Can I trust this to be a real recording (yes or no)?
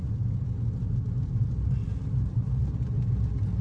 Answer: yes